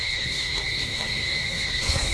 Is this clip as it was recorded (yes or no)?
no